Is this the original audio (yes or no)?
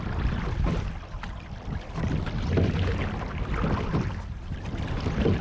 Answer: yes